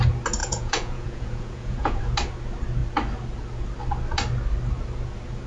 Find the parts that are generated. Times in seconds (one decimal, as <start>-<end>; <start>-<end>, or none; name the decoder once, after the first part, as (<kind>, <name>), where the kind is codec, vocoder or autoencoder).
0.4-2.0 (vocoder, Vocos)